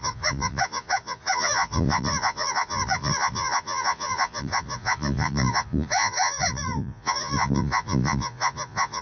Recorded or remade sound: remade